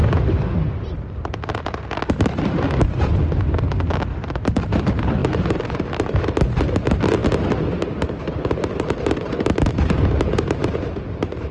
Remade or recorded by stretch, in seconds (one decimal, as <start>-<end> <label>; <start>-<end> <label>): 0.0-11.5 remade